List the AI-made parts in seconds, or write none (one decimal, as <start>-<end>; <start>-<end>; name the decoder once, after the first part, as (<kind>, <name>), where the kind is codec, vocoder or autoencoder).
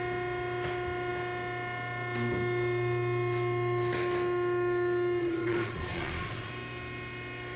5.2-6.5 (vocoder, Vocos)